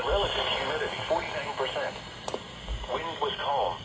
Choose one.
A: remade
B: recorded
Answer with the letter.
B